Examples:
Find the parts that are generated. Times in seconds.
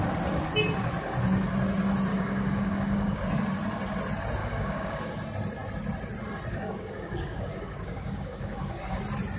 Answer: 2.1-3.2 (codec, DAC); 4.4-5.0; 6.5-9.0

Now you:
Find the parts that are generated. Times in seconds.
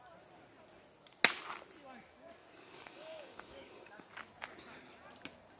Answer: 2.4-4.1 (codec, DAC)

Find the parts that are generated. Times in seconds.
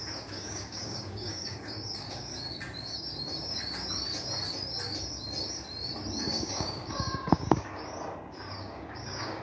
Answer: 0.0-2.3 (codec, DAC); 6.2-7.9; 8.5-9.4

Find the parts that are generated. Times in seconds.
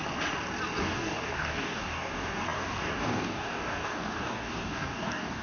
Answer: 0.8-5.4 (codec, DAC)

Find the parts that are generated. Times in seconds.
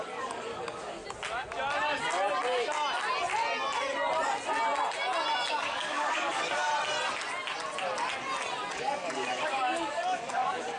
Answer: 0.0-1.0 (codec, DAC); 5.5-6.7; 8.7-10.8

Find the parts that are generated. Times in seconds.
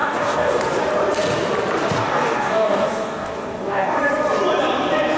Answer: 0.0-0.6 (codec, DAC); 2.0-4.0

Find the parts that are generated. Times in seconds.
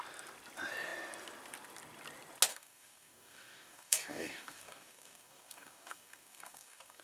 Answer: 2.5-7.0 (codec, DAC)